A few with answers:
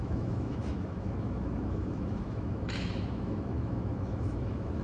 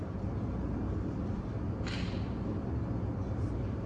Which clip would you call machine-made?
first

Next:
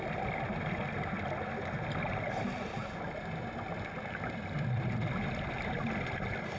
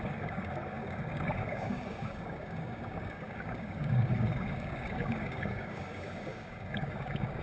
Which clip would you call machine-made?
second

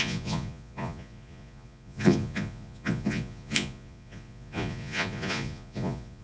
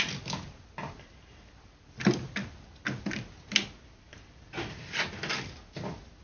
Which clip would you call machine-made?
first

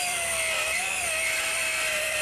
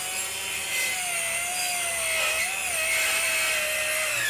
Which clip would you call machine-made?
first